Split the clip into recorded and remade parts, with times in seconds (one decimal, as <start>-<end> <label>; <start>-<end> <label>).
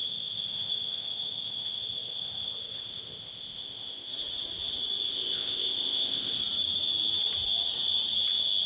0.0-4.1 remade; 4.1-5.1 recorded; 5.1-6.4 remade; 6.4-8.7 recorded